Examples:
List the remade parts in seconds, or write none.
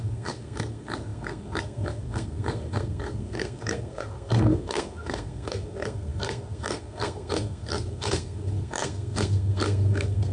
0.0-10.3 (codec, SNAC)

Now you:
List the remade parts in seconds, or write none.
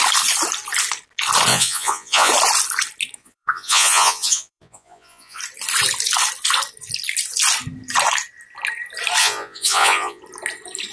1.5-2.3 (vocoder, Vocos); 3.2-5.4; 9.2-10.2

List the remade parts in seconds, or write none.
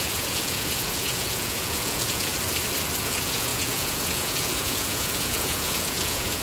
0.0-2.3 (vocoder, Vocos); 3.0-6.4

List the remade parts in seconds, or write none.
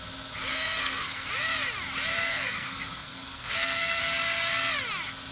0.5-1.3 (codec, SNAC); 2.1-4.0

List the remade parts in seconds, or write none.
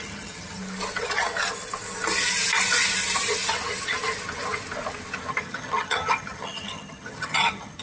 0.0-0.6 (vocoder, HiFi-GAN); 5.3-7.8